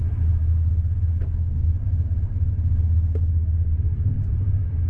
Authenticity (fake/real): real